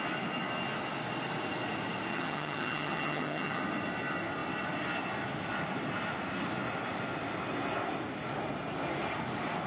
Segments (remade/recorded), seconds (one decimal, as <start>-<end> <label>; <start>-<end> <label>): 0.0-2.1 recorded; 2.1-3.6 remade; 3.6-9.7 recorded